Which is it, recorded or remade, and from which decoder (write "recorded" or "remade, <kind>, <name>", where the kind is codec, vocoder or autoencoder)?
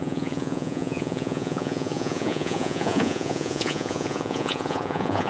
remade, vocoder, Vocos